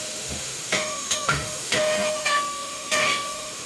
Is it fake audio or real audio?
fake